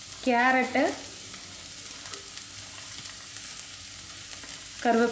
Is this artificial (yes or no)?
no